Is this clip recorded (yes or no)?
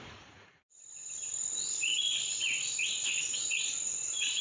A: no